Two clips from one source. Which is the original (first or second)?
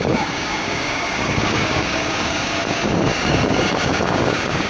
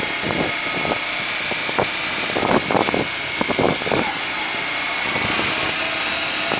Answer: second